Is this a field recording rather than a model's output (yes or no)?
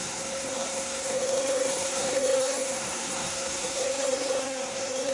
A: no